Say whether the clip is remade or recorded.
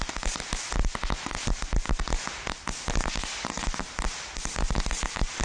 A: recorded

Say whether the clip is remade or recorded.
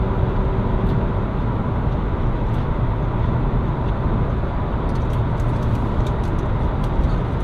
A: recorded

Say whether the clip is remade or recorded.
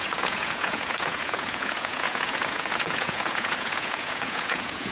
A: remade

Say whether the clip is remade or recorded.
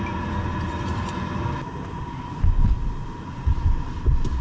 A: recorded